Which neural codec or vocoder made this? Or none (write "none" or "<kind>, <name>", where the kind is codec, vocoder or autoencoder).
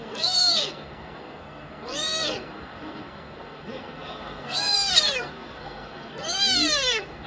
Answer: codec, SNAC